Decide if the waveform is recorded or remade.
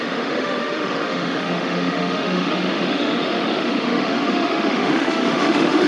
remade